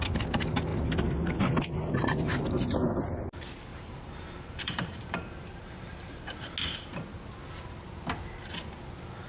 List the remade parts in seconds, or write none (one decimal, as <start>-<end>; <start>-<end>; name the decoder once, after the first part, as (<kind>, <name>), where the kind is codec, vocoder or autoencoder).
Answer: 3.7-6.3 (vocoder, BigVGAN v2)